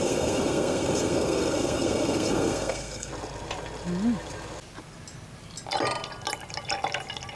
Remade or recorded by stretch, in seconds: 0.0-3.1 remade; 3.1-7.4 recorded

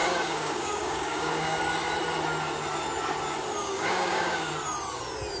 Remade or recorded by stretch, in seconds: 0.0-1.6 remade; 1.6-3.6 recorded; 3.6-4.5 remade; 4.5-5.4 recorded

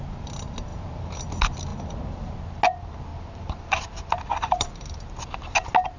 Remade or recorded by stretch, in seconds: 0.0-0.7 recorded; 0.7-1.2 remade; 1.2-3.1 recorded; 3.1-5.0 remade; 5.0-6.0 recorded

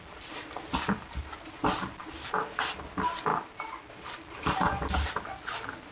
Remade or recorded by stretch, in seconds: 0.0-5.9 recorded

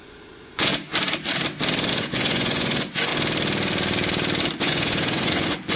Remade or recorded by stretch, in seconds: 0.0-0.7 remade; 0.7-1.9 recorded; 1.9-3.1 remade; 3.1-4.6 recorded; 4.6-5.8 remade